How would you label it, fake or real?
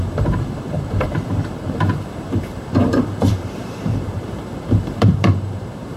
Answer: fake